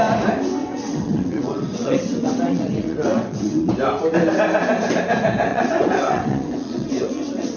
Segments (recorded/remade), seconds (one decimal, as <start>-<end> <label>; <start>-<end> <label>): 0.0-0.6 recorded; 0.6-3.7 remade; 3.7-5.5 recorded; 5.5-7.6 remade